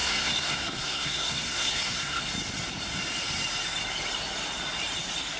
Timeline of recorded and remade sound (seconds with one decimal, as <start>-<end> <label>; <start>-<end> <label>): 0.0-2.3 remade; 2.3-5.4 recorded

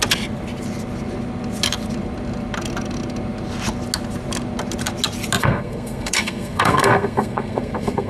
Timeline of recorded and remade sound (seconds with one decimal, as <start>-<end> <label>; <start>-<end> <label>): 0.0-5.4 recorded; 5.4-8.1 remade

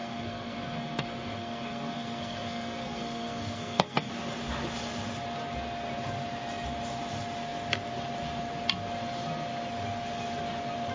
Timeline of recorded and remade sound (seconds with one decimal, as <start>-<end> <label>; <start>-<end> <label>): 0.0-4.1 remade; 4.1-10.9 recorded